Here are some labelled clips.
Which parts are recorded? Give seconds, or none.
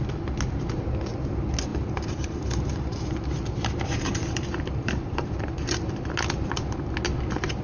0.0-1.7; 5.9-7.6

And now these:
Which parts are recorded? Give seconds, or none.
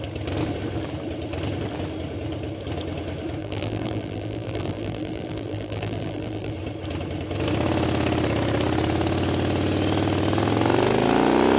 0.0-3.4; 6.5-11.6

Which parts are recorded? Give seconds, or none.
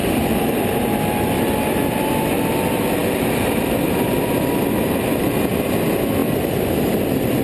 2.1-3.0; 5.5-6.2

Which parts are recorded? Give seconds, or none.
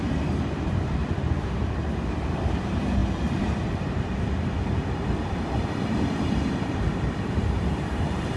1.0-2.2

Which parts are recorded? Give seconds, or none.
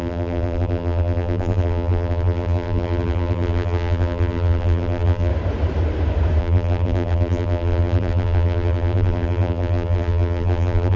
5.3-6.4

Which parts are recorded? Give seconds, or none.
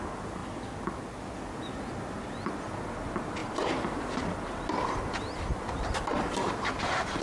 0.0-3.4; 4.2-7.2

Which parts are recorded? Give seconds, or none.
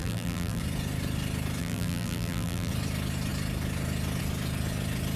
0.6-1.6; 2.7-5.2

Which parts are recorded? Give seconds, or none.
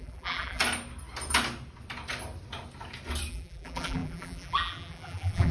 0.6-3.3